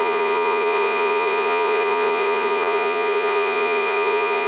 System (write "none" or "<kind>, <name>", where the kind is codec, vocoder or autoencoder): vocoder, Vocos